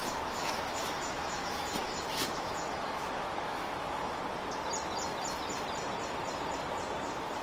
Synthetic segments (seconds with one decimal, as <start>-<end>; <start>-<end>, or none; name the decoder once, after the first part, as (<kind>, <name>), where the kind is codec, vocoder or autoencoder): 0.0-4.2 (autoencoder, DAC-VAE)